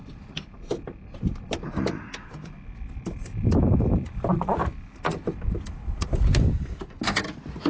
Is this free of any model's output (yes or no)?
yes